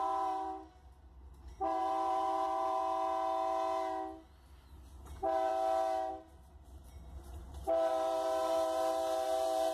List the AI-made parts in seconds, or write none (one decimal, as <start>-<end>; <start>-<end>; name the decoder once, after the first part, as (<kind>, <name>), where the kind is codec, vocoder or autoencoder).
0.0-2.8 (vocoder, BigVGAN v2); 5.0-5.5; 6.1-9.7